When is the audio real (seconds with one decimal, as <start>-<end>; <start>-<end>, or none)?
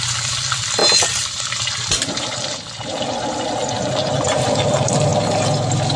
0.0-6.0